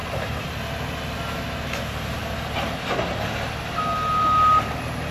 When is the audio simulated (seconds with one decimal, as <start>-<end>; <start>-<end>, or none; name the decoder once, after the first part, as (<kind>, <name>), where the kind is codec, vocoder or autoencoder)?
none